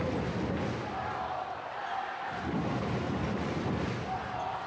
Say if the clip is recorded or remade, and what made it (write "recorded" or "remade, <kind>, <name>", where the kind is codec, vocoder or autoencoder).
recorded